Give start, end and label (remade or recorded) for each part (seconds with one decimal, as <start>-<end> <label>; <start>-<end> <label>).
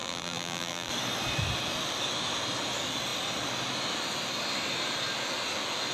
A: 0.0-0.9 remade; 0.9-5.9 recorded